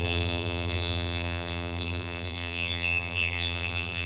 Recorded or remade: remade